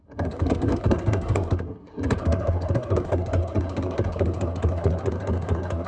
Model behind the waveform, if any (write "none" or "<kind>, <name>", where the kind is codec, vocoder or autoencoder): codec, SNAC